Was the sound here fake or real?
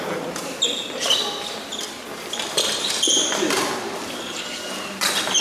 real